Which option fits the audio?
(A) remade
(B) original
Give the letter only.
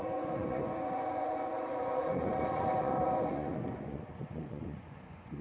A